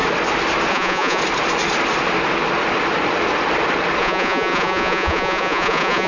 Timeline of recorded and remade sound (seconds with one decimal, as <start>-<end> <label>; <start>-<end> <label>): 0.0-0.7 recorded; 0.7-1.2 remade; 1.2-4.0 recorded; 4.0-6.1 remade